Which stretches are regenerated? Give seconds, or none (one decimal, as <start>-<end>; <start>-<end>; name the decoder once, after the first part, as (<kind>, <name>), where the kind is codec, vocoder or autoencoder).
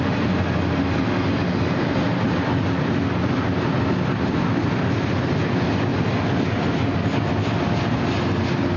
none